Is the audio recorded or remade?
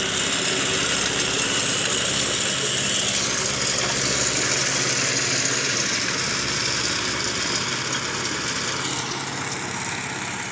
recorded